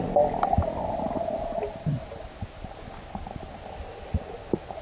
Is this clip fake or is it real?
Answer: real